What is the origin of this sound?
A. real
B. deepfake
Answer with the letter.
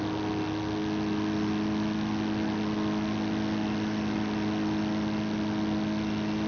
A